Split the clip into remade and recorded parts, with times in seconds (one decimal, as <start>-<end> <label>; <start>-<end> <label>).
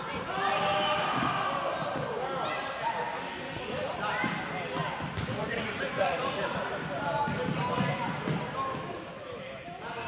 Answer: 0.0-5.4 recorded; 5.4-6.7 remade; 6.7-10.1 recorded